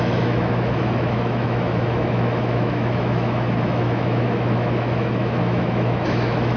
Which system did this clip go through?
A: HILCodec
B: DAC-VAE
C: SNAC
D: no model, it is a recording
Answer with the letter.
B